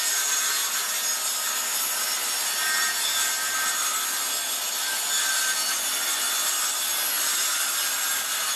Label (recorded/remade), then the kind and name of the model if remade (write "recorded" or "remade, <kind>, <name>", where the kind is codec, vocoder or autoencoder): recorded